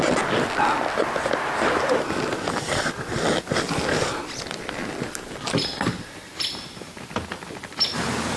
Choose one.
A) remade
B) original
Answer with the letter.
B